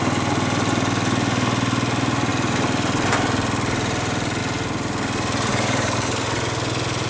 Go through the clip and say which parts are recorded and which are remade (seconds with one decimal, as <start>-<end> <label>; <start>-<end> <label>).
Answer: 0.0-5.5 recorded; 5.5-6.3 remade; 6.3-7.1 recorded